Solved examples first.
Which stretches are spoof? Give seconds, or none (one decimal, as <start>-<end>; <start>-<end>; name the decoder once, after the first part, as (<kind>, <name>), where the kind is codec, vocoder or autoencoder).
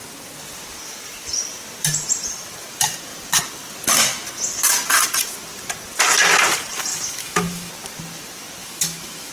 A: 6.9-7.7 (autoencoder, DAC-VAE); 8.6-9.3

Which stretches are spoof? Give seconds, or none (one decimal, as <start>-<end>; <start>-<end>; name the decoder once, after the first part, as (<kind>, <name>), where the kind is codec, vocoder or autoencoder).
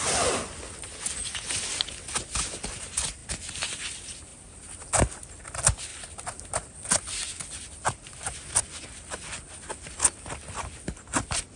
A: 4.3-4.9 (vocoder, BigVGAN v2); 5.9-7.0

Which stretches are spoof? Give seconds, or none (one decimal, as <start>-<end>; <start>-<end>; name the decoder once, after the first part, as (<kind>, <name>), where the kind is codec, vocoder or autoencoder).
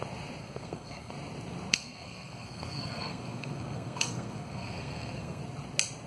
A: 0.4-1.1 (codec, SNAC); 1.7-5.4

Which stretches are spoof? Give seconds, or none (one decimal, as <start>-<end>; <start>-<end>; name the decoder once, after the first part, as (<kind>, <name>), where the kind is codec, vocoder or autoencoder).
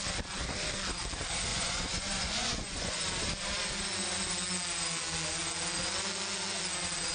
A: 1.5-3.1 (vocoder, Vocos)